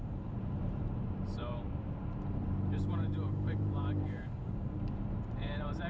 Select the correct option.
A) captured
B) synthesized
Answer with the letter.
B